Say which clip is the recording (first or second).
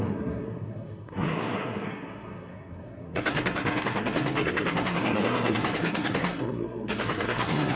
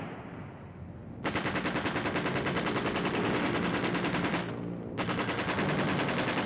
second